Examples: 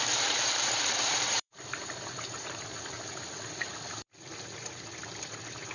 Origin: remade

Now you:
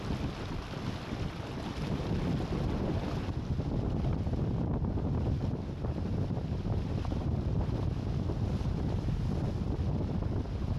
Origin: recorded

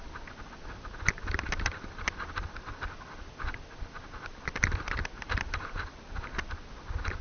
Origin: recorded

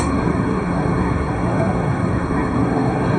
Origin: remade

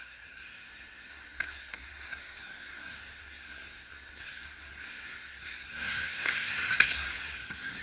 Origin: remade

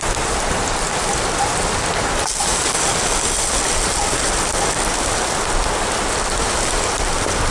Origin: recorded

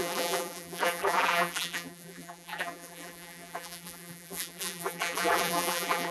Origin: remade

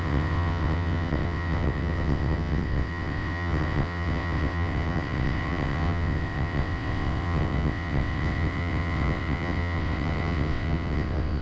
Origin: remade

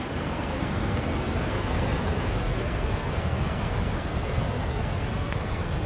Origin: remade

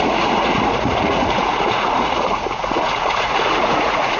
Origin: remade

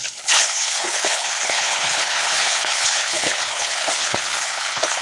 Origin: remade